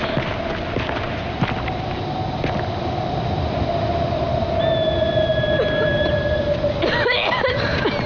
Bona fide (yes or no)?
yes